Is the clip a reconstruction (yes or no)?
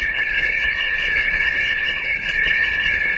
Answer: yes